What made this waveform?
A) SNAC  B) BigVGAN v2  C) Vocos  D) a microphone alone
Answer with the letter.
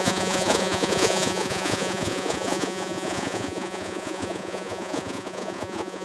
C